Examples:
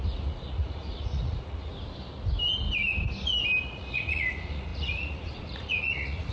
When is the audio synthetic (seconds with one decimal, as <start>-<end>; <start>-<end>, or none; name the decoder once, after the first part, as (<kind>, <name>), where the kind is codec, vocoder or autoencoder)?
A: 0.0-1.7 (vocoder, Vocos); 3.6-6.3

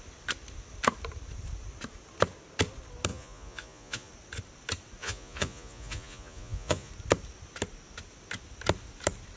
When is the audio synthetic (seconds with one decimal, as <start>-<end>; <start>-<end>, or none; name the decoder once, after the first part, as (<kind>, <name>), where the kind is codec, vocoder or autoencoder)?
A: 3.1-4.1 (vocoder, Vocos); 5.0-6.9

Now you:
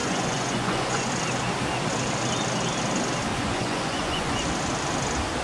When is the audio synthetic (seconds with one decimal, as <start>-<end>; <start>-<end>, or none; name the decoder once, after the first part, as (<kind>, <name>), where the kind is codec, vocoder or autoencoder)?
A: 0.0-1.1 (vocoder, Vocos); 3.3-4.4